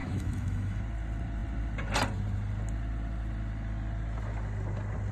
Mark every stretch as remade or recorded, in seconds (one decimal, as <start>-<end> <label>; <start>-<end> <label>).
0.0-0.8 remade; 0.8-5.1 recorded